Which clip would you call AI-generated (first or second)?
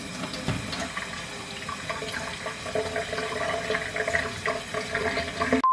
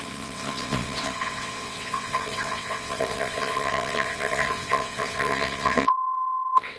second